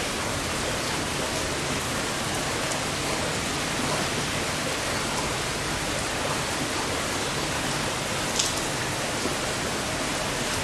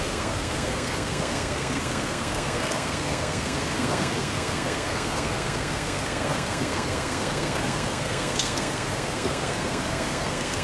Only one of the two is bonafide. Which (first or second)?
first